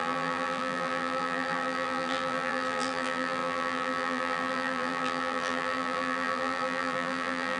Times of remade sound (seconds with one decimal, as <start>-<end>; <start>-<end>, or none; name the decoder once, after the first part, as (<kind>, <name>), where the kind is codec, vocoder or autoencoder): 0.0-7.6 (vocoder, BigVGAN v2)